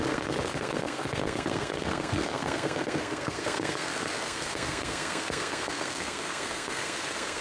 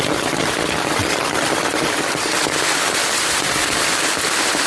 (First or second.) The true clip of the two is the second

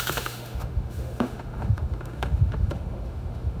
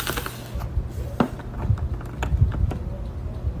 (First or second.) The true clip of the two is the second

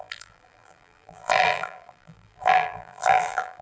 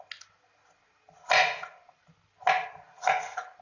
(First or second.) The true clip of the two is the second